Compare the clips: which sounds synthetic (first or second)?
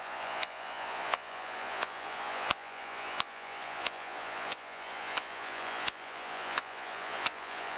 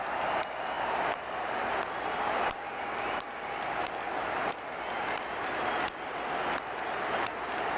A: first